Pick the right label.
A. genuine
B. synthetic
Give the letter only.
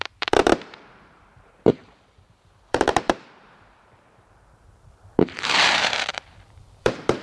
B